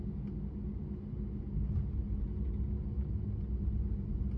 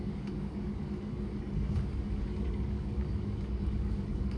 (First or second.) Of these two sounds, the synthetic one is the second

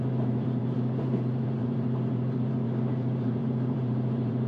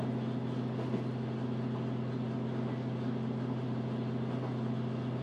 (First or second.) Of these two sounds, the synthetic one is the first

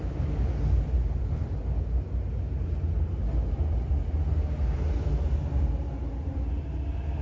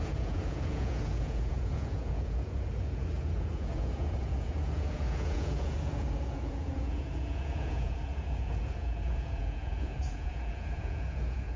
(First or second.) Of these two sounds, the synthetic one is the second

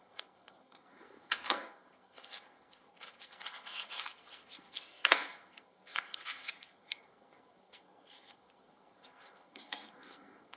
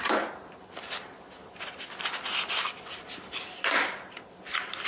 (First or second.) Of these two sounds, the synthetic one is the first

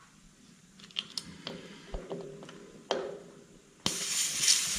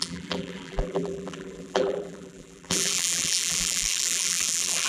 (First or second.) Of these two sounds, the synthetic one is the second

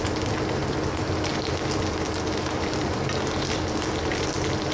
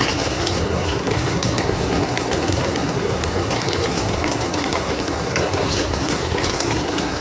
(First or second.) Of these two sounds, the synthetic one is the second